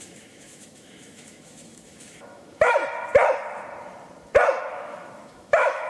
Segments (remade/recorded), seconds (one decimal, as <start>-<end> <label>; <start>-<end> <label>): 0.0-2.8 remade; 2.8-4.6 recorded; 4.6-5.9 remade

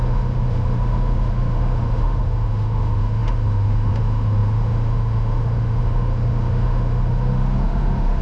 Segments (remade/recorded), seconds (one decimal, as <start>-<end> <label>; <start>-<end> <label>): 0.0-8.2 remade

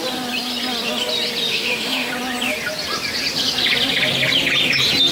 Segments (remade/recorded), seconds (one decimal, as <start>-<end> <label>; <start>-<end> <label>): 0.0-1.5 recorded; 1.5-2.1 remade; 2.1-5.1 recorded

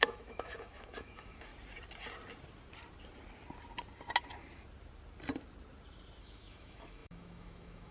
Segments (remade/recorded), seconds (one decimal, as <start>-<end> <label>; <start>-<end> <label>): 0.0-1.5 remade; 1.5-6.2 recorded; 6.2-7.9 remade

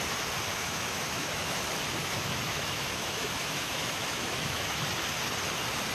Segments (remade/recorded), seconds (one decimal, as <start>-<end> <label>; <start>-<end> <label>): 0.0-0.5 recorded; 0.5-1.6 remade; 1.6-2.0 recorded; 2.0-4.8 remade; 4.8-5.9 recorded

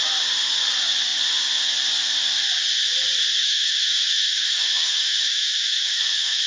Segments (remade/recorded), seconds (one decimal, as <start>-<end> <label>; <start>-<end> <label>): 0.0-3.4 recorded; 3.4-6.5 remade

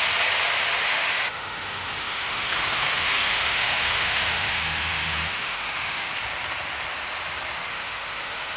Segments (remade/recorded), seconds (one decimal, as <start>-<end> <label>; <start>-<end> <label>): 0.0-0.9 recorded; 0.9-6.1 remade; 6.1-7.7 recorded; 7.7-8.6 remade